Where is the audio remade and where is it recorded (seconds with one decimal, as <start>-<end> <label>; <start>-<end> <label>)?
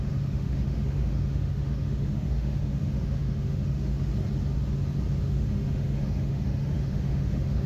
0.0-4.1 remade; 4.1-5.2 recorded; 5.2-7.7 remade